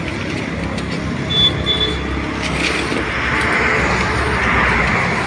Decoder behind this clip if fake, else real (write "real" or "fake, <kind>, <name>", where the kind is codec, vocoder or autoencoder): real